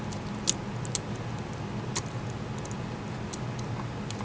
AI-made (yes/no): no